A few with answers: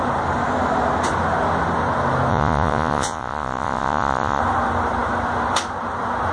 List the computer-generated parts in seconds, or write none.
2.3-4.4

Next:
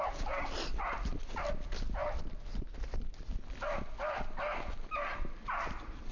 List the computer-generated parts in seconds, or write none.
none

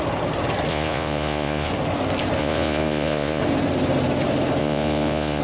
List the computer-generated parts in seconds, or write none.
0.7-1.7; 2.4-3.4; 4.6-5.4

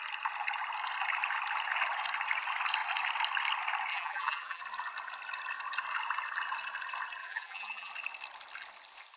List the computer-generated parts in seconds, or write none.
3.9-4.6; 7.2-7.9

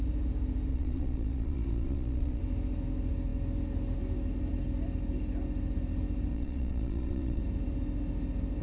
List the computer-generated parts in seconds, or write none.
0.7-2.4; 6.3-7.4